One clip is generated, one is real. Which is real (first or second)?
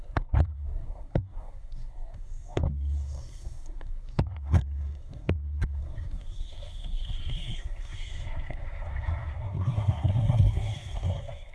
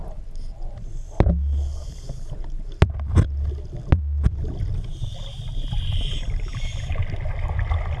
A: second